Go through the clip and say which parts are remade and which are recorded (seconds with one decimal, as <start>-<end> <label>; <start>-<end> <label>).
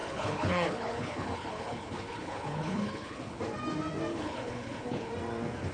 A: 0.0-3.4 remade; 3.4-4.1 recorded; 4.1-5.1 remade; 5.1-5.7 recorded